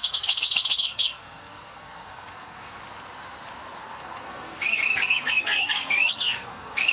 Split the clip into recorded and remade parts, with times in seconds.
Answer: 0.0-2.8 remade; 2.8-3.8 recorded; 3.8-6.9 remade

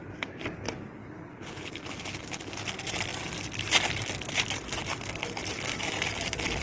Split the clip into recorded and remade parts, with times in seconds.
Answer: 0.0-1.0 recorded; 1.0-1.7 remade; 1.7-6.6 recorded